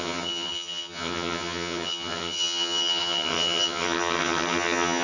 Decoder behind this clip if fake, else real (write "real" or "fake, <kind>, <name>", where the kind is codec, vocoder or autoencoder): fake, vocoder, HiFi-GAN